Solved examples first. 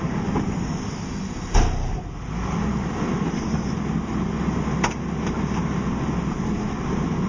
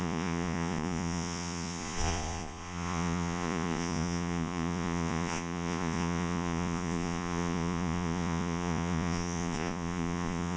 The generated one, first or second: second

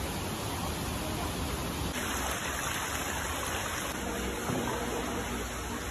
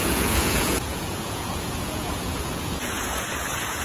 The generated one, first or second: second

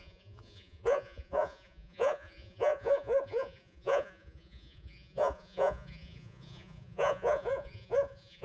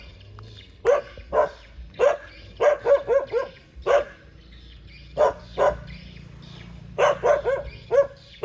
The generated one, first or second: first